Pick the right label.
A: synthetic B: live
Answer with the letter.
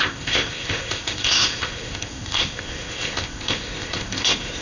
A